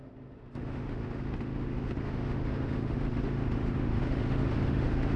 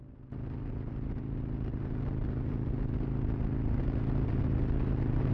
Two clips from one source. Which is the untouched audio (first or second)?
second